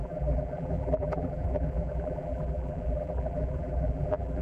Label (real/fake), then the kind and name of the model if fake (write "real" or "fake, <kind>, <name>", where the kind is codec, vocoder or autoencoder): fake, vocoder, BigVGAN v2